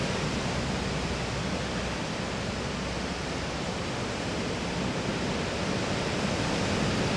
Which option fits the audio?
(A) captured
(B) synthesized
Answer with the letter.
A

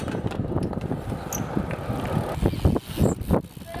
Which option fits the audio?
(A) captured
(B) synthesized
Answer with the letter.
A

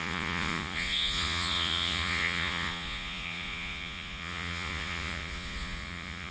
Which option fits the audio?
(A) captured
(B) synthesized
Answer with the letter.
B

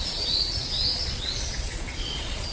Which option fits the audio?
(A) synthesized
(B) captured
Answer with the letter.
A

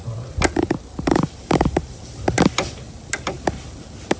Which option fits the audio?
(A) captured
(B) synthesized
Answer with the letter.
A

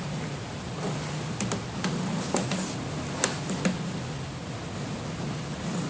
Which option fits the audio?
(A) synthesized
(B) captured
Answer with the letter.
B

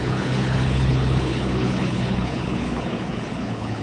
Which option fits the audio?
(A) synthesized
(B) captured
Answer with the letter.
A